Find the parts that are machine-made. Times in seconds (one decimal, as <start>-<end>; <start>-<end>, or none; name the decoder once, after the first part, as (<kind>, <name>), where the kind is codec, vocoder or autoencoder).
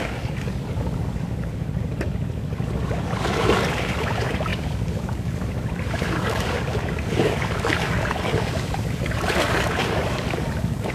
0.0-10.9 (codec, DAC)